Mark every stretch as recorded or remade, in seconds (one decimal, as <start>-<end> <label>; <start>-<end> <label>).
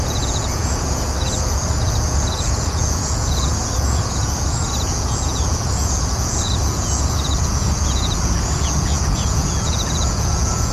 0.0-10.7 remade